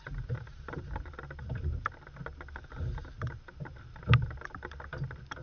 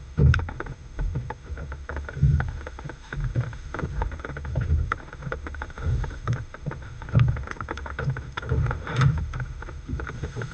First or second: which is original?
first